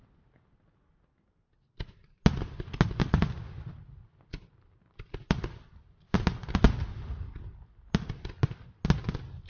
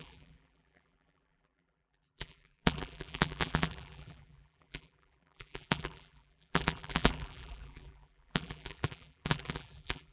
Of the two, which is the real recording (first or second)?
first